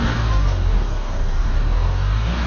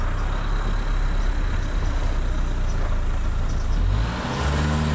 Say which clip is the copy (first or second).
first